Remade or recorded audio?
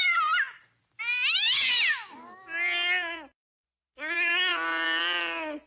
recorded